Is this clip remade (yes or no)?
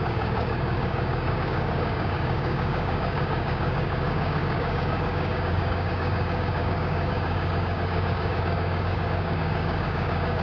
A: yes